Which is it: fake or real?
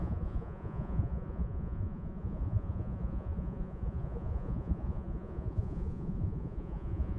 fake